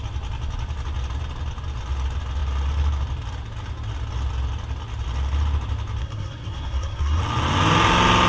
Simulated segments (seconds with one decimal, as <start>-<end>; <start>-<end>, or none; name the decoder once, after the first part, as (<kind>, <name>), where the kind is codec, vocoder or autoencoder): 6.0-7.2 (codec, SNAC)